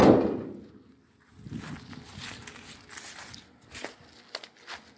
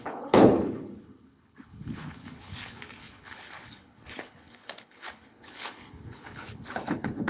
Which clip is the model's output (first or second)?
second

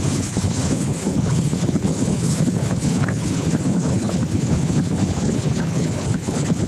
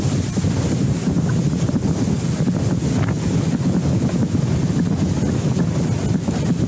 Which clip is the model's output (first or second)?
first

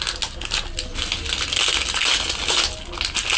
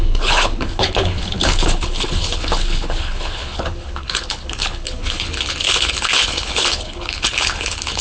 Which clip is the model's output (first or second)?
second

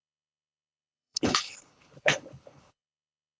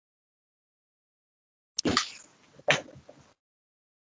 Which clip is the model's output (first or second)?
first